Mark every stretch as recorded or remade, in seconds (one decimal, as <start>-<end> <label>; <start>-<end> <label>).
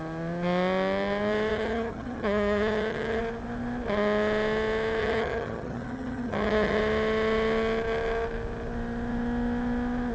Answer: 0.0-1.5 recorded; 1.5-3.2 remade; 3.2-5.0 recorded; 5.0-6.8 remade; 6.8-10.1 recorded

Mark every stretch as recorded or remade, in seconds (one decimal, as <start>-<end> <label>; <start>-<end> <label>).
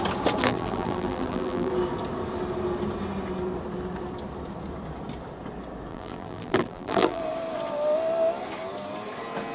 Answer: 0.0-0.4 recorded; 0.4-1.7 remade; 1.7-5.9 recorded; 5.9-7.2 remade; 7.2-9.5 recorded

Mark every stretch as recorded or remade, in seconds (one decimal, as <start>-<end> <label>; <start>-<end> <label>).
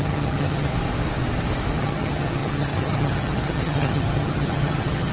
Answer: 0.0-0.7 remade; 0.7-1.8 recorded; 1.8-5.1 remade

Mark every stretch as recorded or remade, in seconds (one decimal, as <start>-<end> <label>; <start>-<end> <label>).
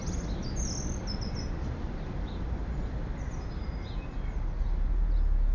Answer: 0.0-5.5 recorded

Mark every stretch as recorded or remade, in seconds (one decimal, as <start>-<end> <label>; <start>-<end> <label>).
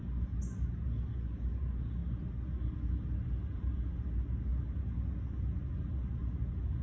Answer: 0.0-6.8 recorded